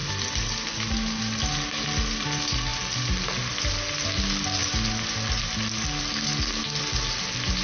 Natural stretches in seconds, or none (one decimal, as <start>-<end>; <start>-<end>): 0.0-7.6